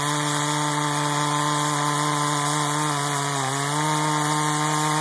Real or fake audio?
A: real